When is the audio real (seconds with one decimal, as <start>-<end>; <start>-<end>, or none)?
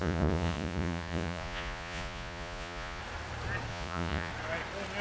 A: 3.0-3.7; 4.3-5.0